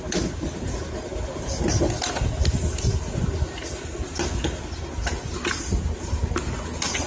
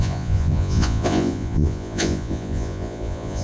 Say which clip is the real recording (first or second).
first